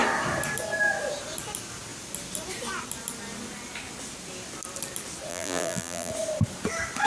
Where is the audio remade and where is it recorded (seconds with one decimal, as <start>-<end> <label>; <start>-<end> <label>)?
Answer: 0.0-5.3 recorded; 5.3-6.1 remade; 6.1-7.1 recorded